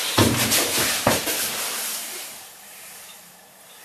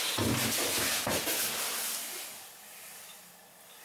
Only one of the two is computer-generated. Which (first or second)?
first